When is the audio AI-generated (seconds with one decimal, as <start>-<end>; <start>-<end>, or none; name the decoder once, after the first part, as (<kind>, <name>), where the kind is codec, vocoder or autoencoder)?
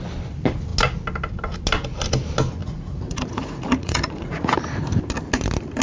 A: 2.6-4.5 (vocoder, Vocos)